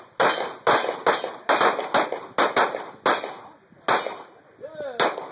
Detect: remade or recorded recorded